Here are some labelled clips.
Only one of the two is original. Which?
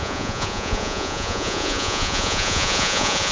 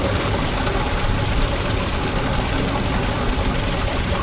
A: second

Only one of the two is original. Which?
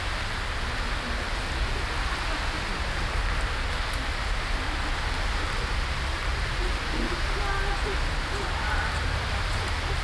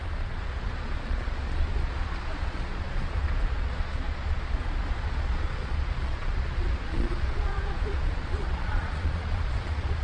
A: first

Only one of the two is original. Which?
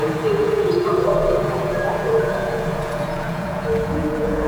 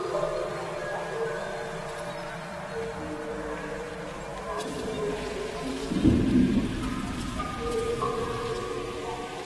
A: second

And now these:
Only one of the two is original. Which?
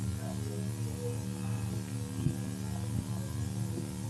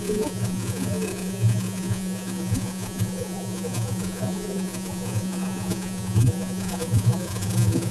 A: first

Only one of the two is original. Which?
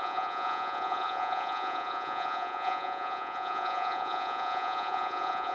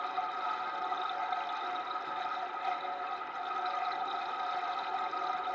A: second